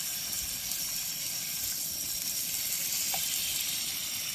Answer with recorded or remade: recorded